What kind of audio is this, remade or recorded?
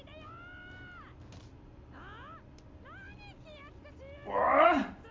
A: recorded